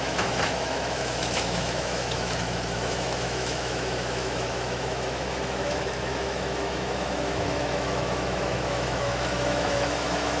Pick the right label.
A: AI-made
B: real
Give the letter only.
A